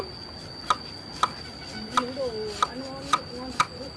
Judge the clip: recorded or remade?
recorded